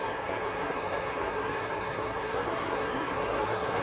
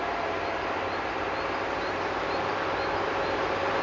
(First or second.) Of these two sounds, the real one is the second